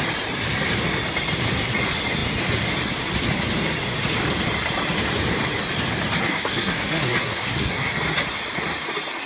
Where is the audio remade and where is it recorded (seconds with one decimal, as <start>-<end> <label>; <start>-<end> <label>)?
0.0-6.2 recorded; 6.2-7.9 remade; 7.9-9.3 recorded